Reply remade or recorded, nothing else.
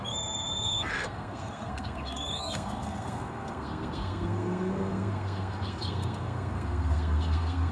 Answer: remade